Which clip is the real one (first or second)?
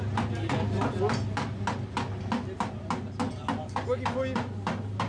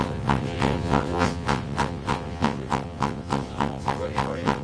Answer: first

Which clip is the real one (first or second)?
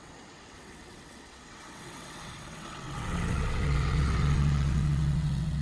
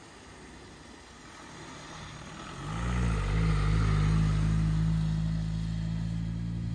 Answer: second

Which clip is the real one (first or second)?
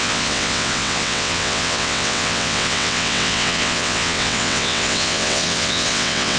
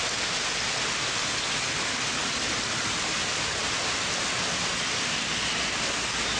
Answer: second